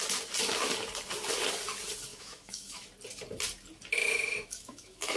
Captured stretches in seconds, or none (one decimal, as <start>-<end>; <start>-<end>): 0.0-2.1; 2.9-4.0